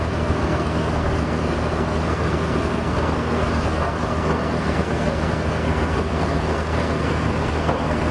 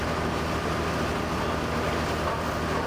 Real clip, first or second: second